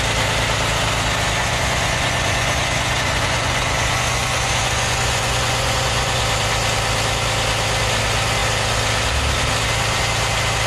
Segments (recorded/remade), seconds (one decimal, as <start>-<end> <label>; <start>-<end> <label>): 0.0-1.4 recorded; 1.4-6.2 remade; 6.2-10.7 recorded